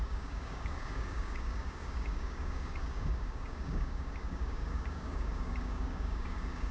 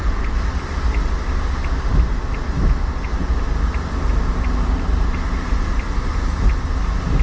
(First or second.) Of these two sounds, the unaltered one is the second